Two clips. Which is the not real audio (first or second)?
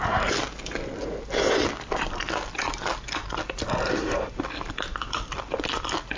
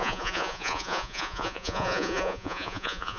second